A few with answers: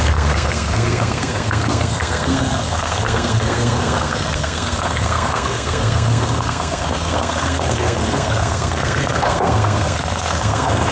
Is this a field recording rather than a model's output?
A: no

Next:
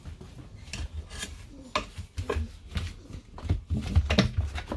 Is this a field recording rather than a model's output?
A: yes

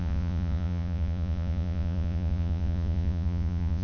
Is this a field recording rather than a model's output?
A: no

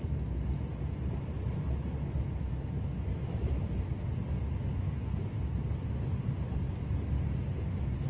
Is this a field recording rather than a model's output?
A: yes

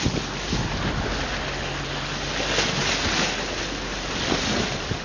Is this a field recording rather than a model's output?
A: yes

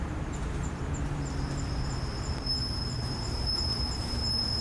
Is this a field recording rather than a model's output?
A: no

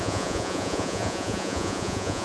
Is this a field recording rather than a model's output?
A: no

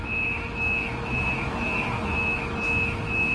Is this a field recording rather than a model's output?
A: no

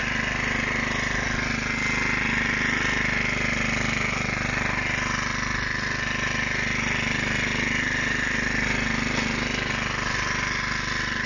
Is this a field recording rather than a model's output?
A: yes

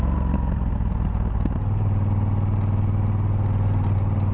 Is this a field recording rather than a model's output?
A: yes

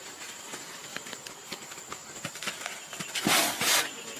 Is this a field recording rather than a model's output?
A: yes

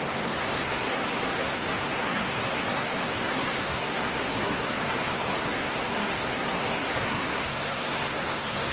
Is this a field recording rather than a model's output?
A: no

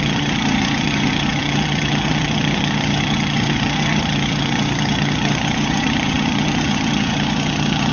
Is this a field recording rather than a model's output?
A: no